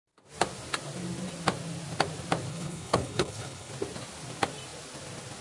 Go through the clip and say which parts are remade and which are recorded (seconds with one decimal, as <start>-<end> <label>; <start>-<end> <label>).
0.0-2.5 recorded; 2.5-3.7 remade; 3.7-5.4 recorded